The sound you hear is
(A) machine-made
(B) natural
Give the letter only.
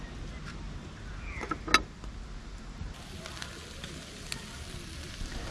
B